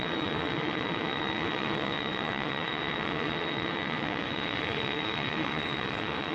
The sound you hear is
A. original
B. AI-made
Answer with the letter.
B